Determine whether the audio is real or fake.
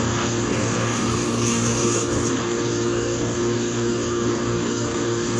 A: fake